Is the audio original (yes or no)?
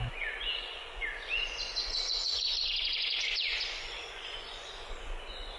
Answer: no